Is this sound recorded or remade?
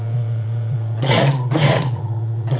remade